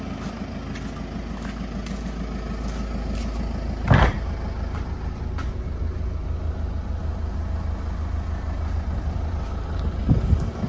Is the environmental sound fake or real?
real